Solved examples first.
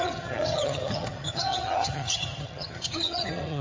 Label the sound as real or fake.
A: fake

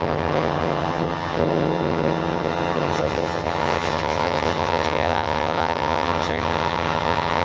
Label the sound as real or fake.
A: fake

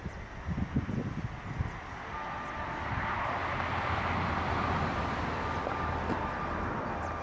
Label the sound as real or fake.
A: real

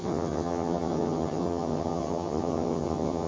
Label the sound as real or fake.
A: fake